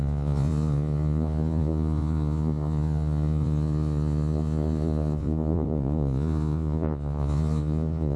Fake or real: fake